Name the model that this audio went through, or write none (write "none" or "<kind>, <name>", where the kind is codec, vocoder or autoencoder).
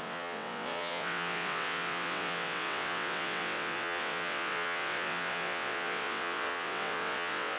vocoder, WaveNeXt